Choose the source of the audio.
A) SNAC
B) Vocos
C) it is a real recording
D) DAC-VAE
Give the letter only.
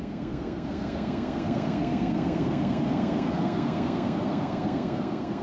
A